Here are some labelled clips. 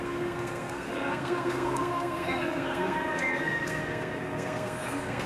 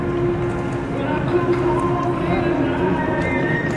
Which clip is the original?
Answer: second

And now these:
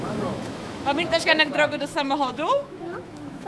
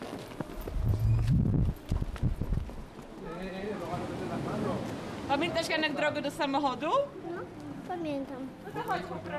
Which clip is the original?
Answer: second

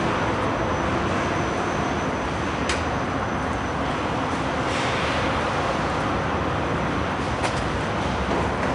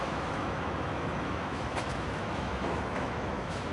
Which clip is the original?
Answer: first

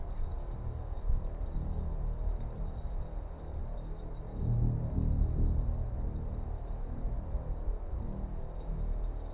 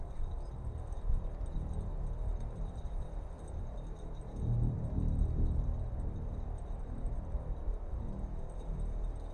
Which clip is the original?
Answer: first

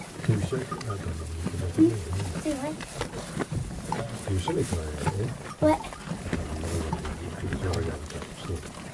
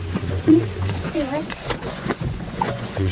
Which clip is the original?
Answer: first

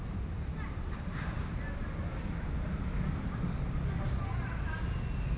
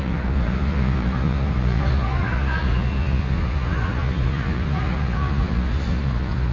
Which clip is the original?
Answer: first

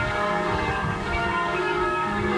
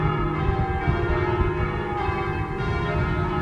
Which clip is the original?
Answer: second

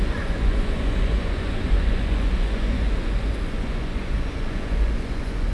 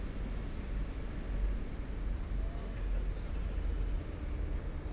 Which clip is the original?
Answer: second